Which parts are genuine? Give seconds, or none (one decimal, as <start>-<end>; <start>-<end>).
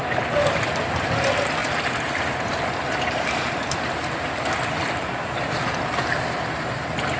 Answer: 0.0-7.2